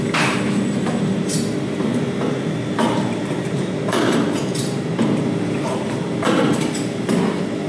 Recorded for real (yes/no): no